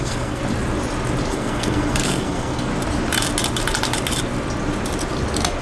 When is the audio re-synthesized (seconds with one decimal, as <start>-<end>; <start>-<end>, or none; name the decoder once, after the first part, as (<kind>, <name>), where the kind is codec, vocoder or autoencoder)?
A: 0.0-0.4 (codec, SNAC); 1.3-2.7